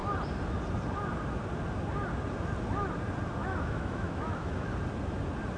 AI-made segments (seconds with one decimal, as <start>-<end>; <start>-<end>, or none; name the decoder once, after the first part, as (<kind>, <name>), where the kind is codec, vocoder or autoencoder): 3.4-4.7 (autoencoder, DAC-VAE)